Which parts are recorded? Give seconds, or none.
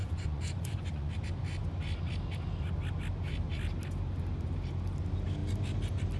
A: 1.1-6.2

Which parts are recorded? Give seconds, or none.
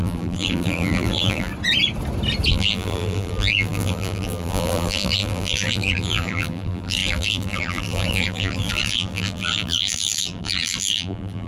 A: 1.5-2.5